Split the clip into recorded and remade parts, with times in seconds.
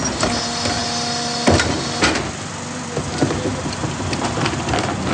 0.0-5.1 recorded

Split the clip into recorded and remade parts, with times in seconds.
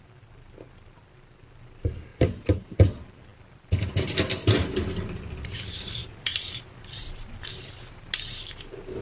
0.0-2.1 recorded; 2.1-2.6 remade; 2.6-6.0 recorded; 6.0-7.5 remade; 7.5-9.0 recorded